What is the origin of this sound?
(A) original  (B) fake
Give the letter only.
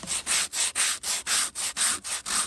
A